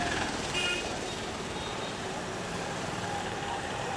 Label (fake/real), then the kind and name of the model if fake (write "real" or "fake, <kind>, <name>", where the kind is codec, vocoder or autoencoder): fake, vocoder, BigVGAN v2